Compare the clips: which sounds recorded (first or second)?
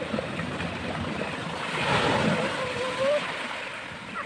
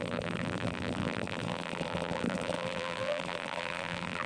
first